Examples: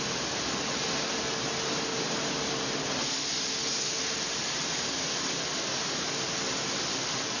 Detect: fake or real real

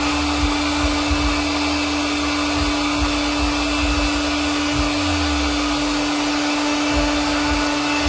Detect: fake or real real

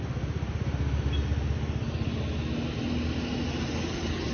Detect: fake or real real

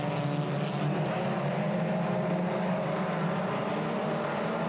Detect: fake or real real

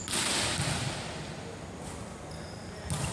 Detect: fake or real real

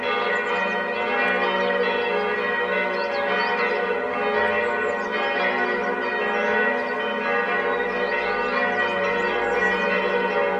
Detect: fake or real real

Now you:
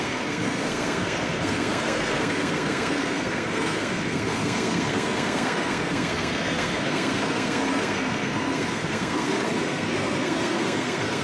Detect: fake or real fake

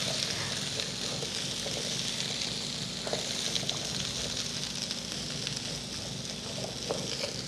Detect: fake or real real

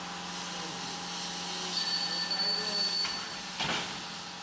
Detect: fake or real real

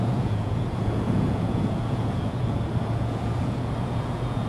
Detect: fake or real fake